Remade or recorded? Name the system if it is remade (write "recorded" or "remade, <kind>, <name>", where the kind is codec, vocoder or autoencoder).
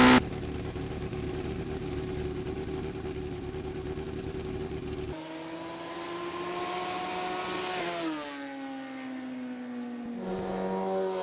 recorded